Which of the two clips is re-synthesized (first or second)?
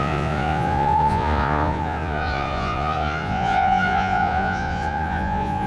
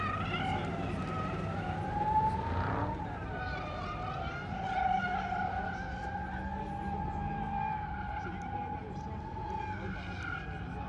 first